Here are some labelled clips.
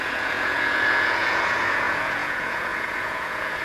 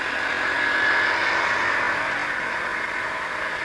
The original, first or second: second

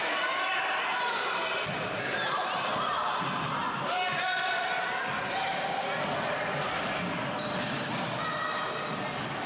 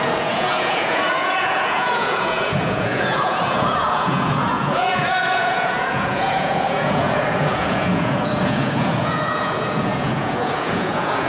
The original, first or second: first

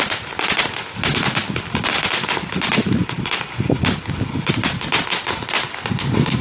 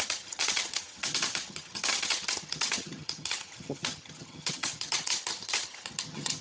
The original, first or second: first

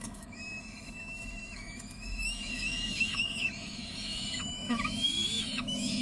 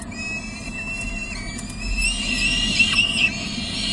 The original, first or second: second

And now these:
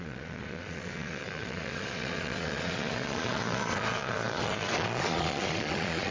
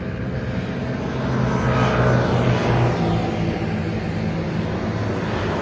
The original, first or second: second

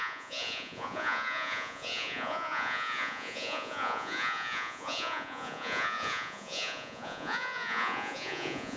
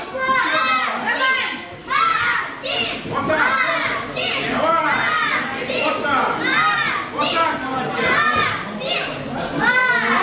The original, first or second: second